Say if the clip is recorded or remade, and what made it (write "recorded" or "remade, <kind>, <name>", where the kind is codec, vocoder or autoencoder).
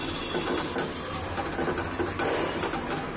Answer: recorded